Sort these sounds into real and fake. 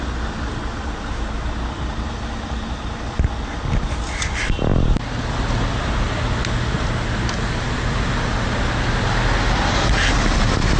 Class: real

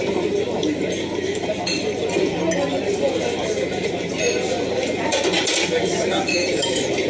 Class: real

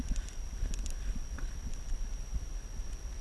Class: fake